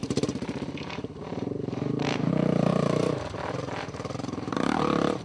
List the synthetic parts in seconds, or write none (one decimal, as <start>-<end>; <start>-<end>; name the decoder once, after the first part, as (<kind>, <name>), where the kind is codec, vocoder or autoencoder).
0.0-2.3 (vocoder, BigVGAN v2); 2.7-5.2